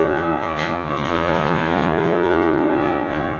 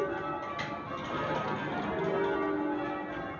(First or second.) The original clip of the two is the second